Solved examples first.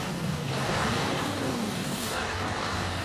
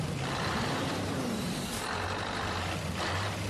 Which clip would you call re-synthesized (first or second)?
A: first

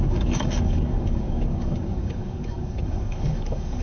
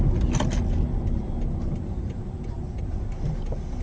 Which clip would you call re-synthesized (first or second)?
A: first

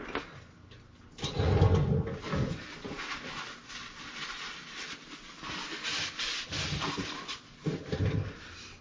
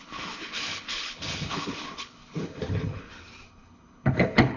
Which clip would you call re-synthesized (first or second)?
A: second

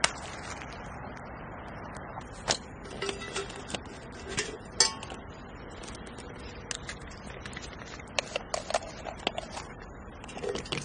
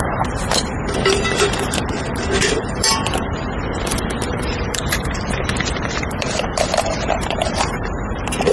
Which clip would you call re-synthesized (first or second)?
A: second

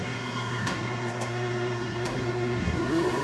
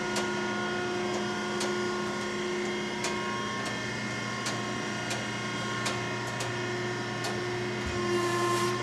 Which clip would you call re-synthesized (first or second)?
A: first